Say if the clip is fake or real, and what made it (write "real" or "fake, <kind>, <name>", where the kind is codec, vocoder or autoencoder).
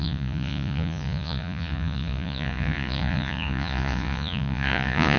fake, vocoder, Vocos